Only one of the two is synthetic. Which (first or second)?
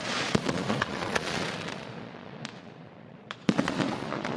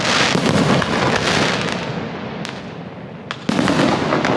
first